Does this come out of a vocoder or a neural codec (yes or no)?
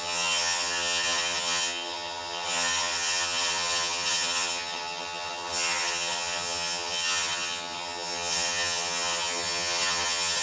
yes